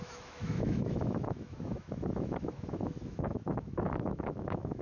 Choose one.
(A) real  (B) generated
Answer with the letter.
B